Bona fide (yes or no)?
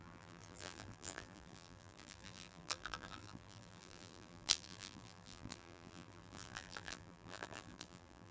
no